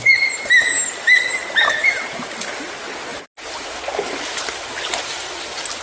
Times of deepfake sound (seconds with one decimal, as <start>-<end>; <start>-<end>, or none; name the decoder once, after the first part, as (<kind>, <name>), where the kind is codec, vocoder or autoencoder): none